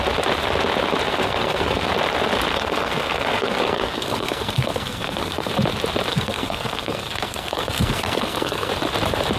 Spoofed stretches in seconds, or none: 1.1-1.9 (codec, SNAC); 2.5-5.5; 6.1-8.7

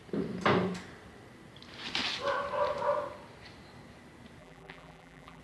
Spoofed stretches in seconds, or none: 4.4-5.4 (vocoder, BigVGAN v2)

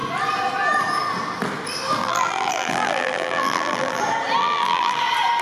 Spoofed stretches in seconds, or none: 2.0-4.0 (vocoder, BigVGAN v2); 4.4-5.0

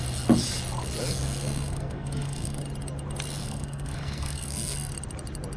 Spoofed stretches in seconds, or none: 1.1-2.6 (codec, SNAC); 3.4-4.9

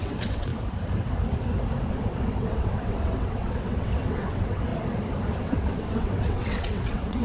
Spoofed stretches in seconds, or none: 0.0-0.5 (vocoder, WaveNeXt); 1.9-4.7; 5.4-7.2

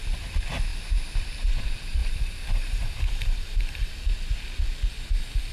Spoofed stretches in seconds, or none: 2.0-3.9 (vocoder, BigVGAN v2)

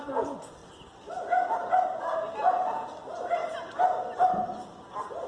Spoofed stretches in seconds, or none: none

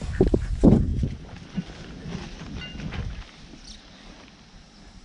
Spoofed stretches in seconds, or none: none